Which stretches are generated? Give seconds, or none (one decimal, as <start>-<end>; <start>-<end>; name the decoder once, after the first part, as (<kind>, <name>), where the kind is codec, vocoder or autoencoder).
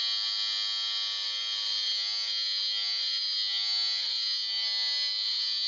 none